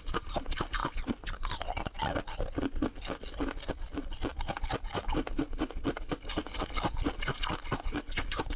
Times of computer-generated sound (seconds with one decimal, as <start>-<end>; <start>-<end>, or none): none